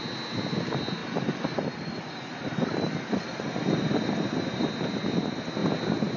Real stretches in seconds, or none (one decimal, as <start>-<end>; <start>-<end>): 0.0-1.0; 4.7-6.2